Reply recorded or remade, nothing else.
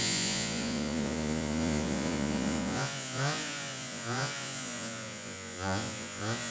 remade